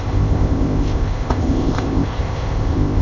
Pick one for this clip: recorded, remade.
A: remade